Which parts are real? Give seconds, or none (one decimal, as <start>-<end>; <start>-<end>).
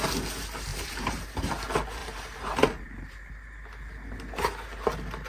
0.0-0.7; 1.5-2.0; 3.3-5.3